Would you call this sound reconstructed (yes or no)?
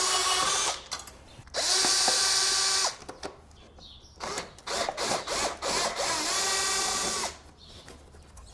no